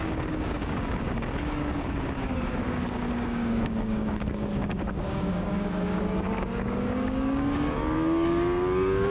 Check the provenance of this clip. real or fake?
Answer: fake